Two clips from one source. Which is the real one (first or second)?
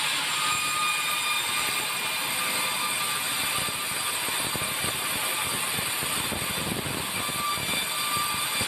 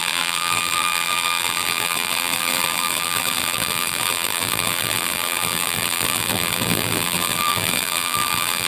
first